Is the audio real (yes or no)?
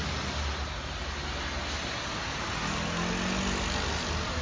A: yes